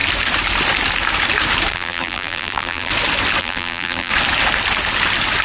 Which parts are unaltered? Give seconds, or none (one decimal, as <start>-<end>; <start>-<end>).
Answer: 0.0-1.7; 2.9-3.4; 4.1-5.4